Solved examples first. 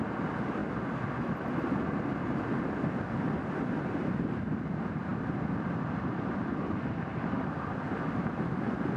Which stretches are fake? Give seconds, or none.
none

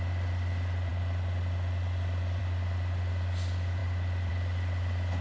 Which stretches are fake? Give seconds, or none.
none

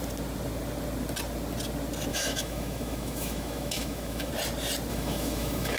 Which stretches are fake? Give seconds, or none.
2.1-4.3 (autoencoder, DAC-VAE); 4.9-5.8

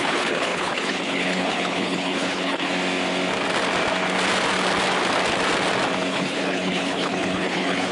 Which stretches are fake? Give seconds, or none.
0.0-2.7 (codec, HILCodec); 6.1-7.9

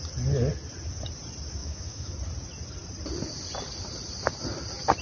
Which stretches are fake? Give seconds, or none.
1.6-2.1 (autoencoder, DAC-VAE)

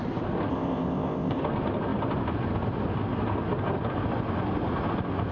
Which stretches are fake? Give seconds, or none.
0.5-1.4 (codec, ZipCodec)

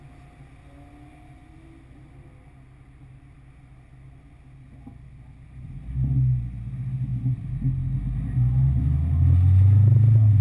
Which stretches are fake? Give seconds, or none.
none